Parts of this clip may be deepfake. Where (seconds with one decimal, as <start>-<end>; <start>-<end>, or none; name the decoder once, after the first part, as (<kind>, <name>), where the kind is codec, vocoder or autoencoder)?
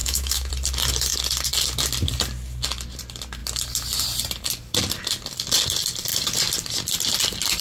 0.0-0.5 (autoencoder, DAC-VAE)